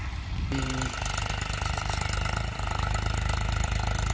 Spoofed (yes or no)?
no